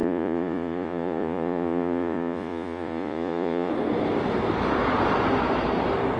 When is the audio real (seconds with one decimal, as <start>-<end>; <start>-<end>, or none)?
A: 3.7-6.2